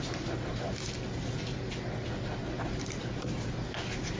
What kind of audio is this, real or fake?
real